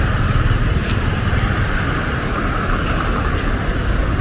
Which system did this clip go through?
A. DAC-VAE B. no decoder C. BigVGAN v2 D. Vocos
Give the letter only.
C